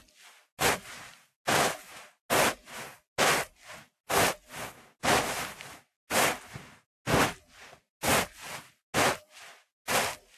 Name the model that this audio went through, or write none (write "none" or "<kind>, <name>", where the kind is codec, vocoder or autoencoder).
none